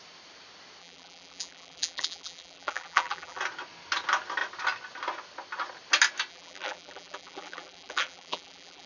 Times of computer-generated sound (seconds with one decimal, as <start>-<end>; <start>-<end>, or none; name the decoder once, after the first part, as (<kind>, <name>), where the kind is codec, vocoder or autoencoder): 0.8-3.4 (vocoder, BigVGAN v2); 6.3-8.9